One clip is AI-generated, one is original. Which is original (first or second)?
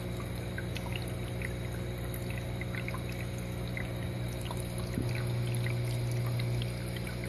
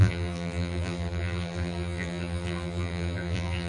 first